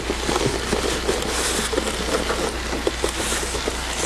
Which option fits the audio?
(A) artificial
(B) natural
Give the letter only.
B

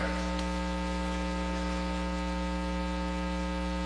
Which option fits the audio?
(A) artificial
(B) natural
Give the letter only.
B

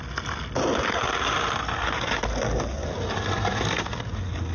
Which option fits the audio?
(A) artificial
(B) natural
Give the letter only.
B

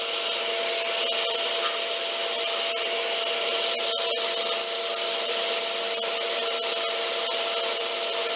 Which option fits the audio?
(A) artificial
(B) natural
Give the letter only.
B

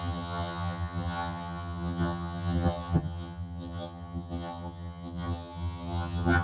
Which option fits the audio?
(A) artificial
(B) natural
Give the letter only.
A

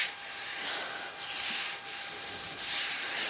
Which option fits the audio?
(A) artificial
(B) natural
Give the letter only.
A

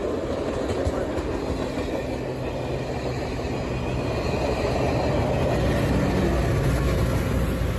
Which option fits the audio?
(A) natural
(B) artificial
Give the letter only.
A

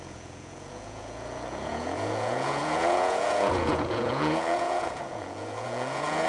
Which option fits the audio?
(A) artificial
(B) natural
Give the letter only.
A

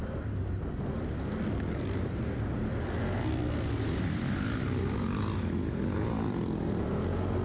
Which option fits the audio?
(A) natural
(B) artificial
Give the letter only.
A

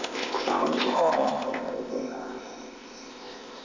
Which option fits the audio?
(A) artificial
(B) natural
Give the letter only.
A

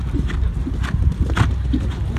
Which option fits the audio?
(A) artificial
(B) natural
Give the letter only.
B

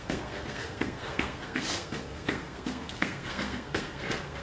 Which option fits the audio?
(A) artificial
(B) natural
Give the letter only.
A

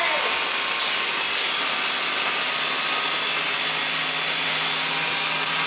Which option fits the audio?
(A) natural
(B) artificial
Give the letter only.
A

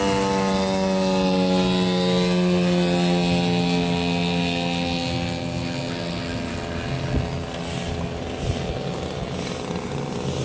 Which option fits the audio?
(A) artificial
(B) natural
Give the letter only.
B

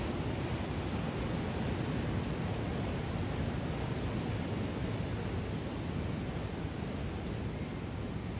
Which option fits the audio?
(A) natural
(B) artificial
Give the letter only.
A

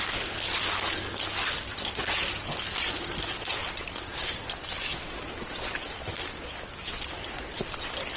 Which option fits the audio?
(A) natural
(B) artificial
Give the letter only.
A